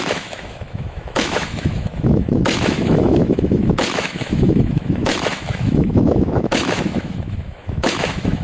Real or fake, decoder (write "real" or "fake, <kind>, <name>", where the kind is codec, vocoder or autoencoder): fake, autoencoder, DAC-VAE